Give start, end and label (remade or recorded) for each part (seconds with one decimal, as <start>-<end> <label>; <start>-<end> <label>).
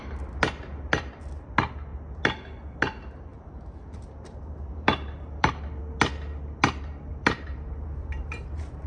0.0-3.3 recorded; 3.3-5.5 remade; 5.5-7.1 recorded; 7.1-8.9 remade